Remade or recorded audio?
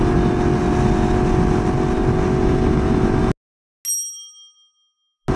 recorded